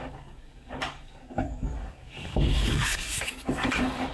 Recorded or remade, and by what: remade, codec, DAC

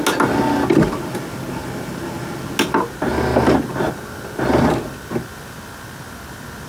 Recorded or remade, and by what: recorded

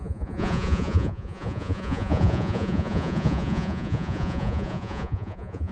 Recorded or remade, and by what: remade, vocoder, Vocos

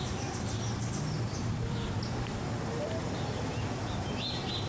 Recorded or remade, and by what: recorded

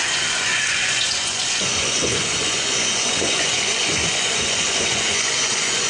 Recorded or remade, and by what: remade, vocoder, Vocos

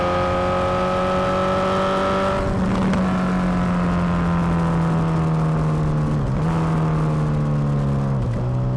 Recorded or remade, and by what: recorded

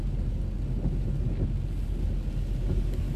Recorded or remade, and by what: recorded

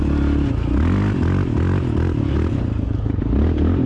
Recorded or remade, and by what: recorded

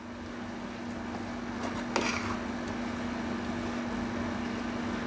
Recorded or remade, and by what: recorded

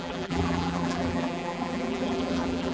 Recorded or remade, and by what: remade, vocoder, BigVGAN v2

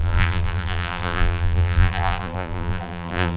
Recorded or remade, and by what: remade, vocoder, BigVGAN v2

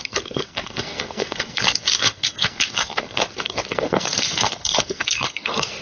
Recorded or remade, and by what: remade, codec, SNAC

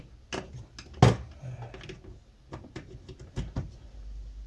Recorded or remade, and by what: recorded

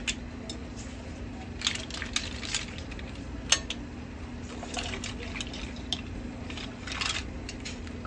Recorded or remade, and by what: recorded